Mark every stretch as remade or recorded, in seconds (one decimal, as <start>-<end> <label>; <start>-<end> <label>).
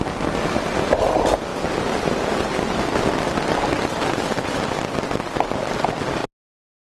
0.0-6.2 remade; 6.2-7.0 recorded